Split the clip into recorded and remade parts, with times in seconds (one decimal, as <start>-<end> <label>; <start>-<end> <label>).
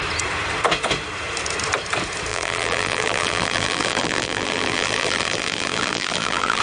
0.0-2.3 recorded; 2.3-6.6 remade